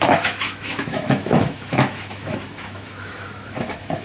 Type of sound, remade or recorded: remade